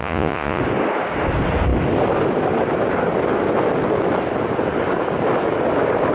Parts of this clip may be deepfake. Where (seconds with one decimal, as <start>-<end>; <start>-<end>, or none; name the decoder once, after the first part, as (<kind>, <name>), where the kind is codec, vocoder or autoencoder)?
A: 0.0-0.6 (vocoder, Vocos)